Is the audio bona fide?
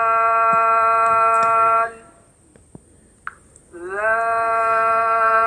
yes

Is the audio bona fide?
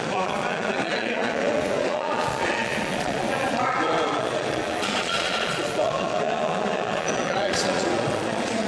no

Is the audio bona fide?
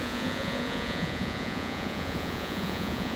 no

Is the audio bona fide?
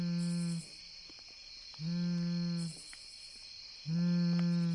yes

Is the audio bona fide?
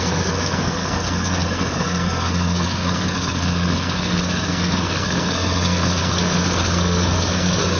no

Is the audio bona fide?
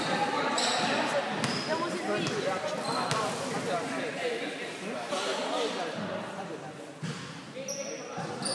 yes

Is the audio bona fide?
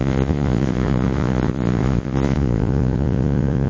no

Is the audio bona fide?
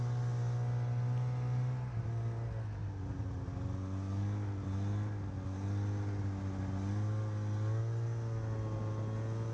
yes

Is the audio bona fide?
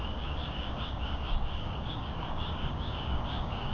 no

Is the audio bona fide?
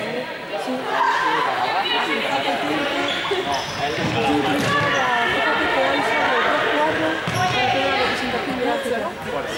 yes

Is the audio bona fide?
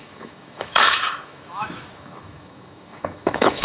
no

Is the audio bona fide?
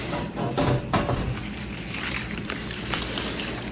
yes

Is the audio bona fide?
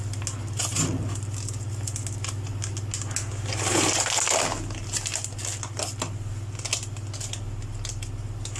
yes